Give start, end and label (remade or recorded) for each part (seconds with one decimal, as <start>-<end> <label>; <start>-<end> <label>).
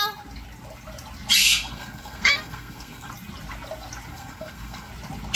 0.0-1.4 recorded; 1.4-3.1 remade; 3.1-4.1 recorded; 4.1-4.9 remade; 4.9-5.4 recorded